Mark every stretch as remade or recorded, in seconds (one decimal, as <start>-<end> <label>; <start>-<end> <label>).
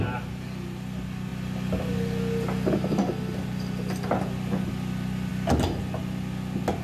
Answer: 0.0-6.8 recorded